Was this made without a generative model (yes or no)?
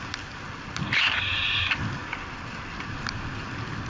yes